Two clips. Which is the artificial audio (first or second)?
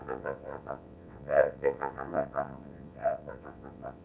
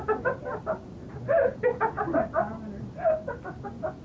first